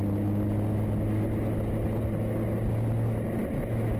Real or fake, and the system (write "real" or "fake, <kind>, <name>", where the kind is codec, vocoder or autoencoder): real